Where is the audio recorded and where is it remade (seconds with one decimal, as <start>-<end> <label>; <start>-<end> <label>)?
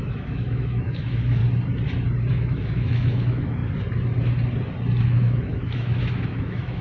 0.0-1.4 remade; 1.4-2.3 recorded; 2.3-3.6 remade; 3.6-5.0 recorded; 5.0-6.8 remade